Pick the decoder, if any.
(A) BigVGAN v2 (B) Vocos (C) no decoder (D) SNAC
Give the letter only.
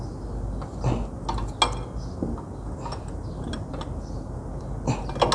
C